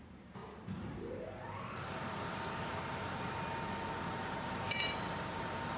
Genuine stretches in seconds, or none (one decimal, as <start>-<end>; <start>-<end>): 0.4-3.9